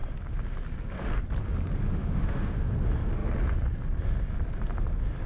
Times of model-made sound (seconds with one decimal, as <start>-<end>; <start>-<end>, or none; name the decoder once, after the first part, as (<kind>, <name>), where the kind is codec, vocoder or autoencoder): 1.9-2.7 (autoencoder, DAC-VAE)